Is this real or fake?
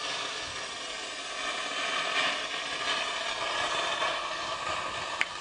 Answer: fake